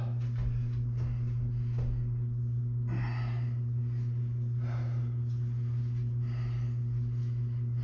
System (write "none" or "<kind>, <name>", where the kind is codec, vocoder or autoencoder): none